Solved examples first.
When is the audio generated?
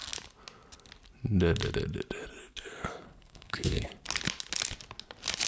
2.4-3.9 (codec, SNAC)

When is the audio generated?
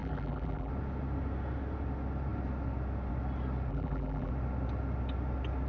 0.0-0.7 (vocoder, BigVGAN v2); 3.7-4.3